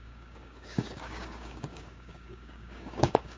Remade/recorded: remade